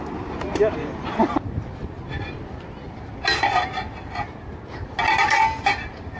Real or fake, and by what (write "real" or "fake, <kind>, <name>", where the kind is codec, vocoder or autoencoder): real